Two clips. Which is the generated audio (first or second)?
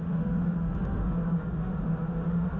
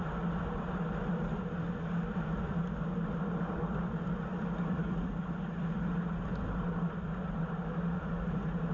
first